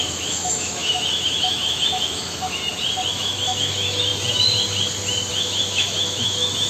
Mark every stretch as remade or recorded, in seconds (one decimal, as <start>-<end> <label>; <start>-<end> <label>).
0.0-2.6 remade; 2.6-3.1 recorded; 3.1-4.1 remade; 4.1-5.3 recorded; 5.3-6.7 remade